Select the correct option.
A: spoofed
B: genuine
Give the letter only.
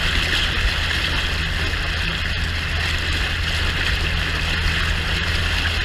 B